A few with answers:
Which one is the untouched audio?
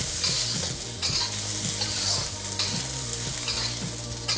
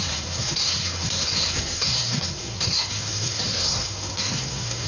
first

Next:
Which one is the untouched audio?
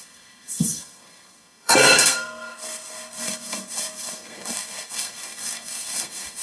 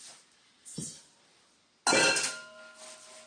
second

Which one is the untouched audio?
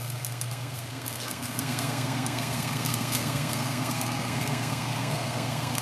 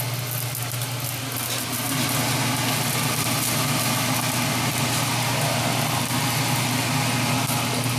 second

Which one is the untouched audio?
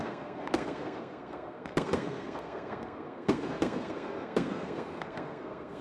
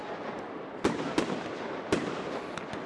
second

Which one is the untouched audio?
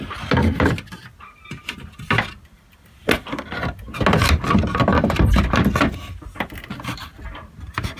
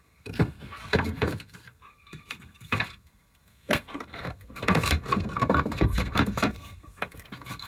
first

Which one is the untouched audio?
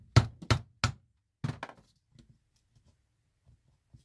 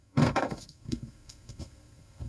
first